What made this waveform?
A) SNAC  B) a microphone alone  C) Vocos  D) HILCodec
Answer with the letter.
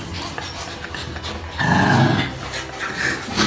B